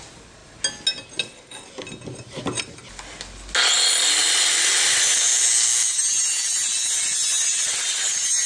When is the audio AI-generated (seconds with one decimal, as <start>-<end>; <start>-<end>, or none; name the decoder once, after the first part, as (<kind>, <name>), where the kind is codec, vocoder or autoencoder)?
none